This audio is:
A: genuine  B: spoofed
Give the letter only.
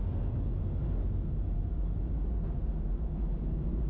A